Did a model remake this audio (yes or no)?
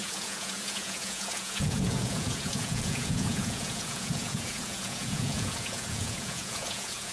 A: yes